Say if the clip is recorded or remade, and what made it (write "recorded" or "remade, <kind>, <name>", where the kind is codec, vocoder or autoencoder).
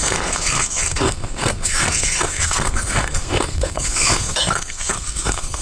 remade, codec, SNAC